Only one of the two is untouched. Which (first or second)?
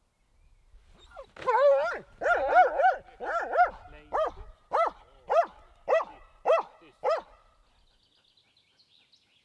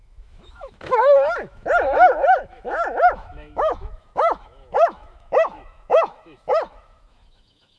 first